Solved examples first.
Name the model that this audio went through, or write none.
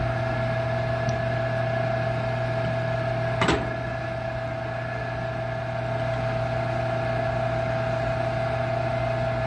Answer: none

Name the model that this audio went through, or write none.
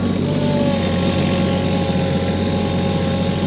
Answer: none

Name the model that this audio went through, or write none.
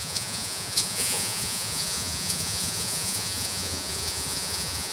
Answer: vocoder, Vocos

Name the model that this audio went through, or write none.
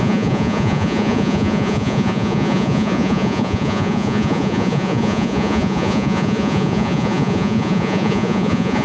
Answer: vocoder, Vocos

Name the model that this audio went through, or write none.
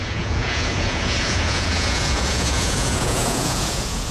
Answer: vocoder, Vocos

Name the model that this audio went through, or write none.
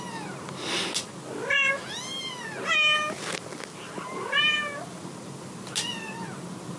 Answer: none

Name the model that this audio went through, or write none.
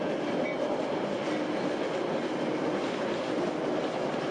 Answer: none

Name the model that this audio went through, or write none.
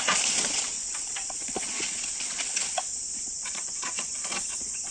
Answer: vocoder, Vocos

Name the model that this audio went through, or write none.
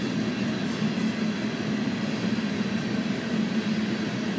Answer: none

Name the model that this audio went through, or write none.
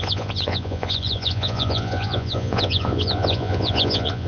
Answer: vocoder, Vocos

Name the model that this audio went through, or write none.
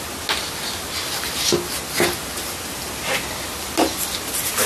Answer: none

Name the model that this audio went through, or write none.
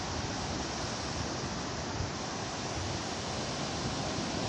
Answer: none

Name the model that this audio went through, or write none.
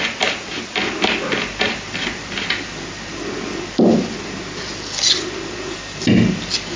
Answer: none